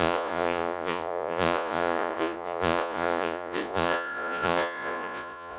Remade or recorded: remade